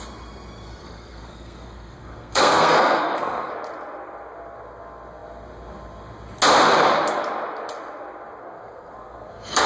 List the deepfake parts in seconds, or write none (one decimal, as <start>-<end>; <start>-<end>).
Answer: 0.8-3.5; 8.4-9.7